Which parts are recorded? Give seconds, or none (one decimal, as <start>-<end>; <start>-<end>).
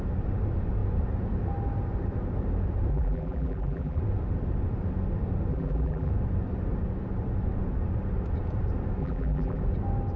0.0-2.9; 4.0-5.5; 6.1-9.0; 9.6-10.2